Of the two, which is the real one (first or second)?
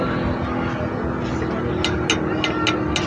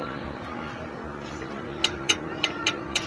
first